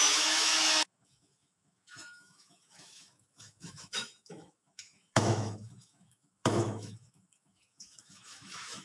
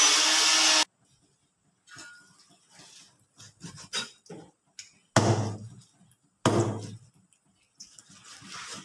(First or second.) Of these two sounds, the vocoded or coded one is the first